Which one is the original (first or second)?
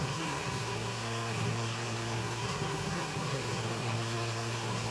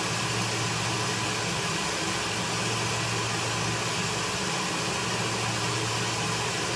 second